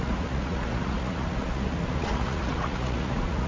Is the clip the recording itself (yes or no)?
no